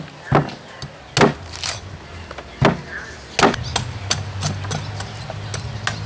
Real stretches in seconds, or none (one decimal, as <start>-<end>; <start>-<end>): 0.0-6.1

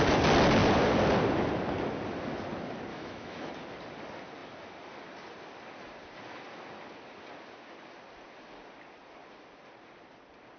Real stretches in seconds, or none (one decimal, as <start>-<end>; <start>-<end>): 0.0-2.9; 3.5-10.6